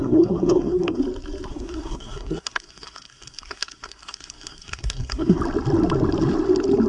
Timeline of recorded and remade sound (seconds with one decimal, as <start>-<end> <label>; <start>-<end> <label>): 0.0-1.0 remade; 1.0-1.5 recorded; 1.5-5.4 remade; 5.4-6.9 recorded